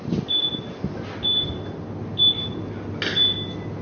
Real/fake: real